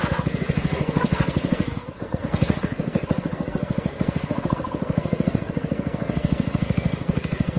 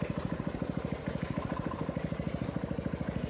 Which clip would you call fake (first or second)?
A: first